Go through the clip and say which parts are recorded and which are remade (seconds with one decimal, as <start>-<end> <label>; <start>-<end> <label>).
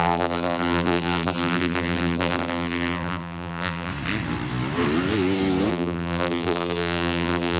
0.0-3.9 remade; 3.9-5.7 recorded; 5.7-7.6 remade